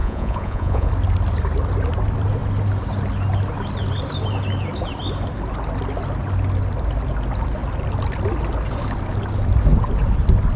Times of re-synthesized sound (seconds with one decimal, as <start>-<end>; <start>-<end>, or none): 0.0-0.9